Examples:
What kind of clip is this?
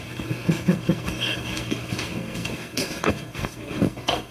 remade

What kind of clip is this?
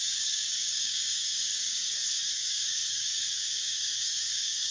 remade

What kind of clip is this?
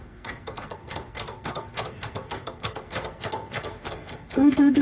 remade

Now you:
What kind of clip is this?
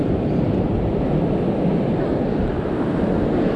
recorded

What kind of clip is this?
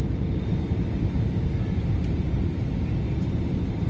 recorded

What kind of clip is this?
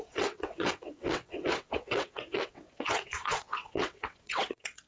remade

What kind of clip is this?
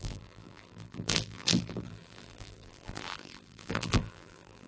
remade